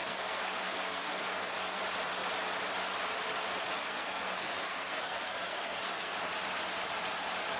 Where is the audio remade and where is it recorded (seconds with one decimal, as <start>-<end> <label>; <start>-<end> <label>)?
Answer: 0.0-1.8 remade; 1.8-3.8 recorded; 3.8-6.1 remade; 6.1-7.6 recorded